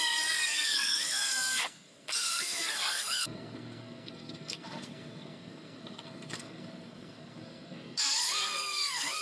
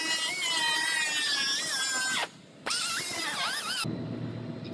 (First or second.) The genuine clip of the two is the second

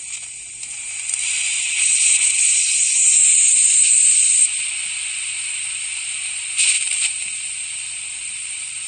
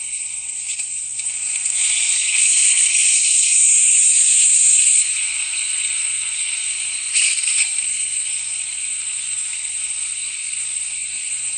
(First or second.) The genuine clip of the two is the first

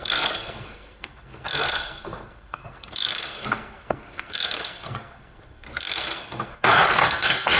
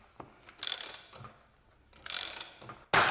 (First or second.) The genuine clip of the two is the second